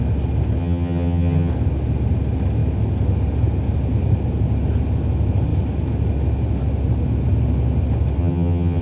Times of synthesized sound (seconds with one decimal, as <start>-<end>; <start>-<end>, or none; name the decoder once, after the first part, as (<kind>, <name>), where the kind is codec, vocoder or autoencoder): 0.6-1.5 (vocoder, HiFi-GAN); 8.2-8.8